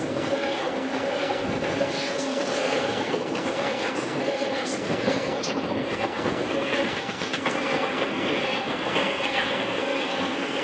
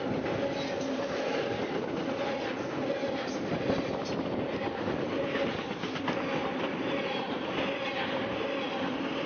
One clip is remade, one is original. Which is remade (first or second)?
first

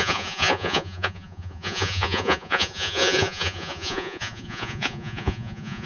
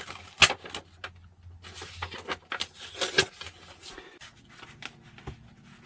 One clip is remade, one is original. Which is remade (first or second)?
first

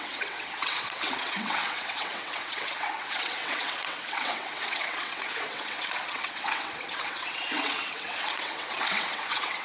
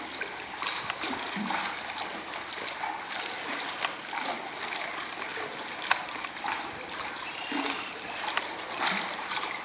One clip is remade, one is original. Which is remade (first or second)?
first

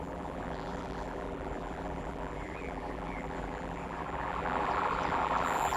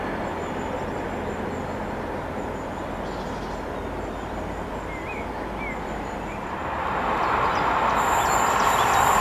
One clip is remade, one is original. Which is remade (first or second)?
first